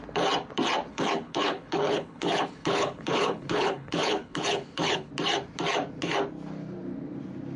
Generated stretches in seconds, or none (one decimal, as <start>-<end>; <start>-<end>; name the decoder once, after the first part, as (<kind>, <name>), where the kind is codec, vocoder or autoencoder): 0.9-5.1 (codec, HILCodec)